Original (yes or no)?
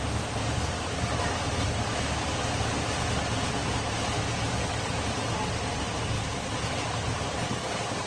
yes